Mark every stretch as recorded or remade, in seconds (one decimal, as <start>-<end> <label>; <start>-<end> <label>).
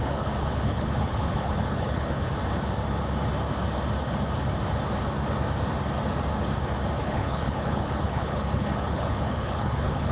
0.0-2.3 remade; 2.3-7.0 recorded; 7.0-10.1 remade